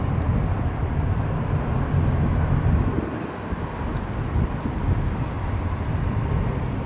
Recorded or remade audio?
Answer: recorded